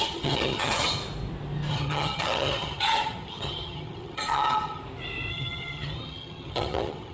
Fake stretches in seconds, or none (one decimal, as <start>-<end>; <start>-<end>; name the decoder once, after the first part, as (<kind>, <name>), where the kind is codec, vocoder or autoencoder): 0.0-1.0 (vocoder, HiFi-GAN); 1.7-4.8; 5.3-7.1